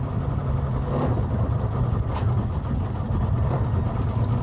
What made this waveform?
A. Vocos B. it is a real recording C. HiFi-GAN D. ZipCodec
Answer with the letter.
B